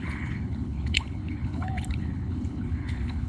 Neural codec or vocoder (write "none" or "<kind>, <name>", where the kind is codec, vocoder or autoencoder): codec, HILCodec